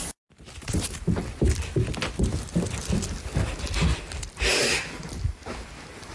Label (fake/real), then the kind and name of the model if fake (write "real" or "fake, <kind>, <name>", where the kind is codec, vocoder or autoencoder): real